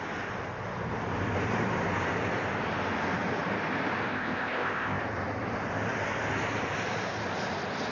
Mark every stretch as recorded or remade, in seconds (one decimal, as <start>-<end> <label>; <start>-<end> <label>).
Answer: 0.0-4.1 recorded; 4.1-5.0 remade; 5.0-7.9 recorded